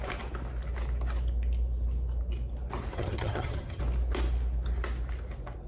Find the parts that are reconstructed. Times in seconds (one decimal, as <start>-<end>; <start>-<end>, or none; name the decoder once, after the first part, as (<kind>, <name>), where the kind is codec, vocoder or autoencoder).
2.9-3.8 (vocoder, HiFi-GAN)